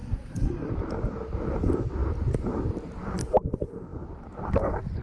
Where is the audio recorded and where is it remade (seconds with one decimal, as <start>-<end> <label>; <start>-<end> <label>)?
0.0-0.7 remade; 0.7-5.0 recorded

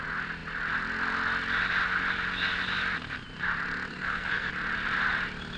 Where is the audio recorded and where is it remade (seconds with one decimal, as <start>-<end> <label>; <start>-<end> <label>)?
0.0-3.9 recorded; 3.9-4.5 remade; 4.5-5.6 recorded